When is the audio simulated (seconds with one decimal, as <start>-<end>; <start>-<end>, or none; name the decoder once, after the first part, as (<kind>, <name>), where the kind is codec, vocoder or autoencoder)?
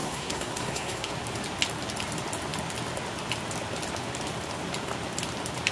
0.0-1.1 (codec, SNAC)